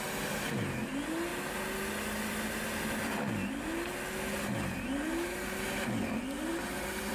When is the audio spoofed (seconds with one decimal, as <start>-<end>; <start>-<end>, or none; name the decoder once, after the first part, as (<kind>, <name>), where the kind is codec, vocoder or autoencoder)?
none